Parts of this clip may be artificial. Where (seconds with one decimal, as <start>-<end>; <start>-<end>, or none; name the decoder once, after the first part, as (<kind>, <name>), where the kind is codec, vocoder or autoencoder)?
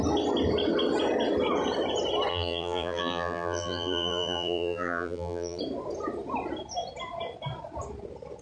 2.3-5.6 (vocoder, BigVGAN v2)